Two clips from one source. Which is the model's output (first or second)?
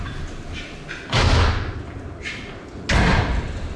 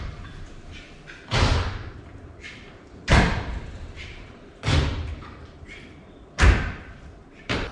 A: second